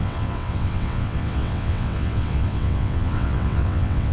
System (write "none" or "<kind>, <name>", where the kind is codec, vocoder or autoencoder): vocoder, WaveNeXt